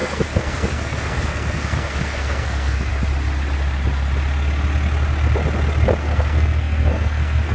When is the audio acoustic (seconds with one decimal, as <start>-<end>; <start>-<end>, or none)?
2.9-6.0